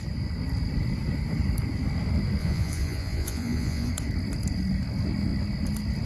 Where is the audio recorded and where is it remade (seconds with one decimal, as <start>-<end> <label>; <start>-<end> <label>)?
0.0-2.4 recorded; 2.4-3.9 remade; 3.9-6.1 recorded